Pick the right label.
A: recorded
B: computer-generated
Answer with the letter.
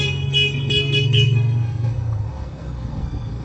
B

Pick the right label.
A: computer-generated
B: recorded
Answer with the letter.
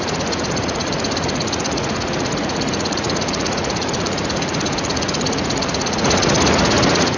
A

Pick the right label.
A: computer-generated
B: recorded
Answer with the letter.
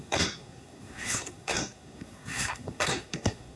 A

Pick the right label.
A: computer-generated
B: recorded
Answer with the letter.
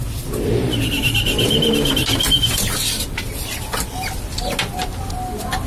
B